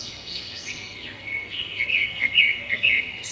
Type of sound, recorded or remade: remade